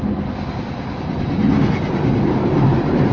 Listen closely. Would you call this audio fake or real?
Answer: real